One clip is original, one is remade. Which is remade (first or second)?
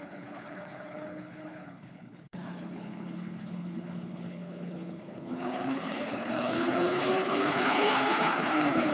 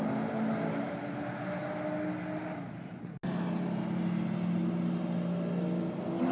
first